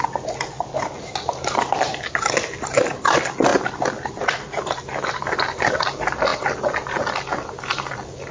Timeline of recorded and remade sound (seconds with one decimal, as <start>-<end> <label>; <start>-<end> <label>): 0.0-8.3 recorded